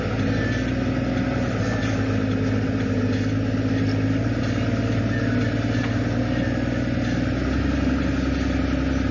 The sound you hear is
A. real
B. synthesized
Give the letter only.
A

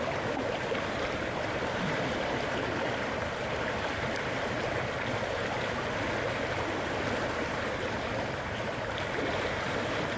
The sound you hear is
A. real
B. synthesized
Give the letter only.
A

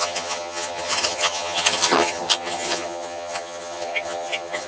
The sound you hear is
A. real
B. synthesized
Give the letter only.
B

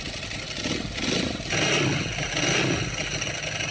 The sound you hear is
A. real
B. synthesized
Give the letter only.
A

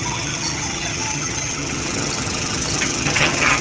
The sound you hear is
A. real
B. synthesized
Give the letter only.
B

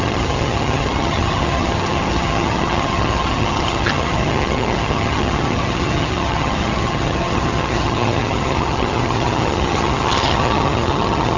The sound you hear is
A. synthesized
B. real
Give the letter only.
A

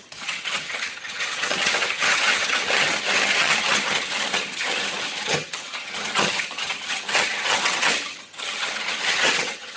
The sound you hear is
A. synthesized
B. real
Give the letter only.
A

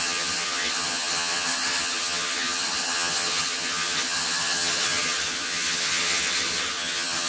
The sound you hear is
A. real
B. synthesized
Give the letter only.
B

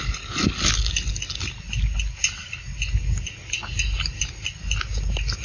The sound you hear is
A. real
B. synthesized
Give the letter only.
A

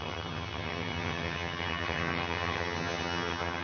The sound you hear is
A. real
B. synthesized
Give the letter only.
B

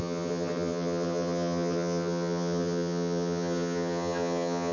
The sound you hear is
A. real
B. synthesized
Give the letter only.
B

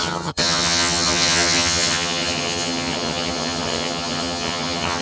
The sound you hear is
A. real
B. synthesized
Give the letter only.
B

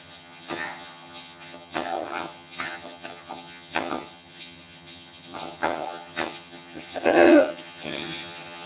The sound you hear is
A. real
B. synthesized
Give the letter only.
B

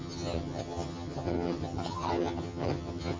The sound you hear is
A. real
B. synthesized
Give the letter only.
B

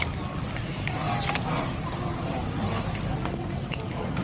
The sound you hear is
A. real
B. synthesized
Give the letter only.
A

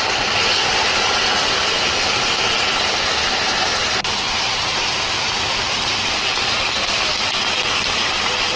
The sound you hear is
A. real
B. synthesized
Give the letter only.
A